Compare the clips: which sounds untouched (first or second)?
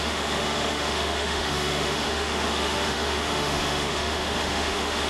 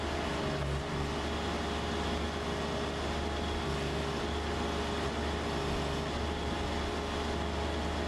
second